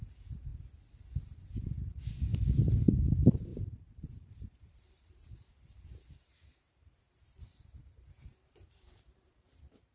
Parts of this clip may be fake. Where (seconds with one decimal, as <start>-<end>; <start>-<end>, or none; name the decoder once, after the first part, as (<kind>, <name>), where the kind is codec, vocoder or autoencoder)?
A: 0.0-0.5 (vocoder, BigVGAN v2); 1.0-2.3; 2.8-9.9